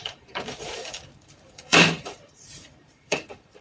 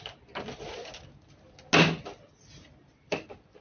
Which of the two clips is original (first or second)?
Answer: second